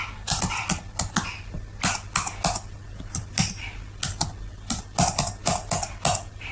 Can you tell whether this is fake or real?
real